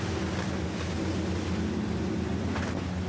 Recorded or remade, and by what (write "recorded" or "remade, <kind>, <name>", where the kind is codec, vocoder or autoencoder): recorded